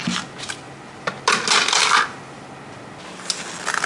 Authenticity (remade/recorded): recorded